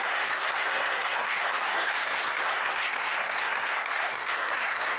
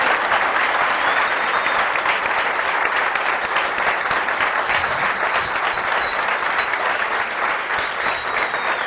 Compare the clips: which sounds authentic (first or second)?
second